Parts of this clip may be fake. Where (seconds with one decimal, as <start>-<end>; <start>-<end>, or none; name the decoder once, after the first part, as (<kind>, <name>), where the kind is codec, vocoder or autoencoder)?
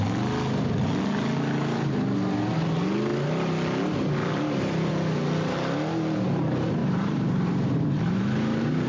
6.8-8.9 (vocoder, BigVGAN v2)